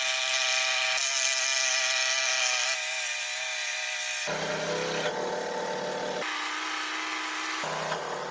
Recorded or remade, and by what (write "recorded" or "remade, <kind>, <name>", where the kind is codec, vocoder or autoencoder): recorded